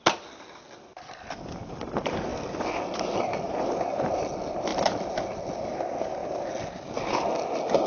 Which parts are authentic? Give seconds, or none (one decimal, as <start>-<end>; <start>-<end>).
0.0-7.9